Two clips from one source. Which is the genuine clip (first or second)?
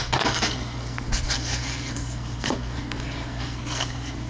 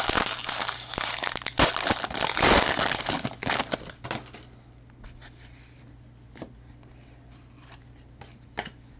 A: second